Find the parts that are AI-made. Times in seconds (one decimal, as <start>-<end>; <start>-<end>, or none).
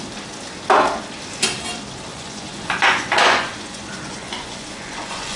2.1-5.4